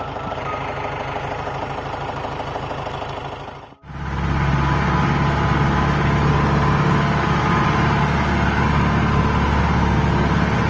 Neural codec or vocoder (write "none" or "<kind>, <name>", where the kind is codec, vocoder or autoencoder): none